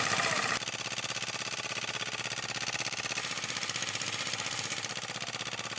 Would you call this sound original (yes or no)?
yes